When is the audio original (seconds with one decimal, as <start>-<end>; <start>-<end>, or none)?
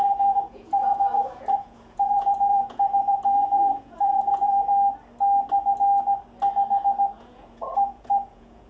4.7-7.2